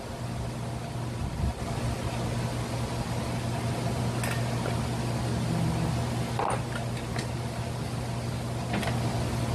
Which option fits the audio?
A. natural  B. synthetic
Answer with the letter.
A